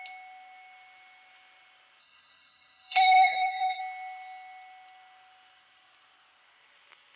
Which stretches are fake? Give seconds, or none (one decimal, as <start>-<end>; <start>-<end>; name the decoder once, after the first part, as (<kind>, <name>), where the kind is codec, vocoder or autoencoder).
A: 2.0-3.8 (codec, SNAC)